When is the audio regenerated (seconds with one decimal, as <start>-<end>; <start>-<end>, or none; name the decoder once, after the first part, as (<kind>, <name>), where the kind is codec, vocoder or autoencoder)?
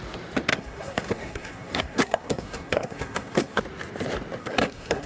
0.5-3.6 (codec, SNAC); 4.4-5.1